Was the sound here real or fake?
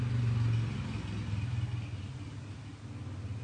real